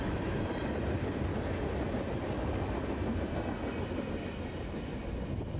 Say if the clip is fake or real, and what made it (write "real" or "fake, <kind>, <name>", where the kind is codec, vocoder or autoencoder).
real